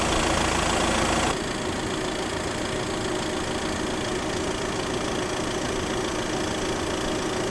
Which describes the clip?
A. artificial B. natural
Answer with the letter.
B